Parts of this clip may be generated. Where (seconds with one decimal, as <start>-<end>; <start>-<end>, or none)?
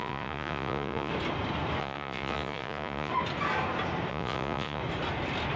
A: 0.0-1.1; 1.8-3.1; 4.1-4.8